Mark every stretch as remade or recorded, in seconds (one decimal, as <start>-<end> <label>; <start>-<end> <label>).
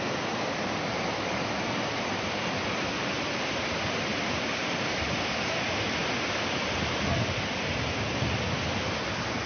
0.0-9.5 recorded